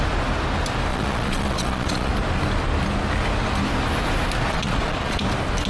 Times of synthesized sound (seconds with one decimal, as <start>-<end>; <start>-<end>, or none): 0.9-2.1; 4.5-5.2